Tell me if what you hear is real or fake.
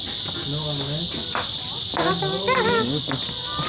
real